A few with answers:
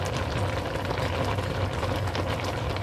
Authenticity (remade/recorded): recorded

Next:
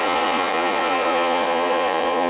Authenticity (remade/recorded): remade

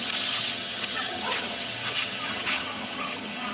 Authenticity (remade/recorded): remade